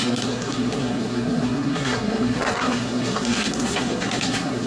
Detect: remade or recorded remade